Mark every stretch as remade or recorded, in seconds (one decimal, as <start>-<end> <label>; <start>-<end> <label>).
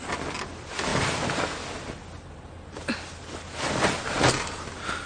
0.0-5.1 recorded